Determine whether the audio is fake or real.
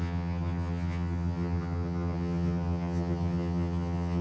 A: fake